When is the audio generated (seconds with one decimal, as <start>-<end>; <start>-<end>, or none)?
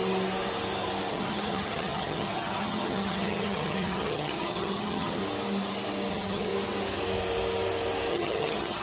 1.1-5.2; 6.1-6.5; 8.1-8.8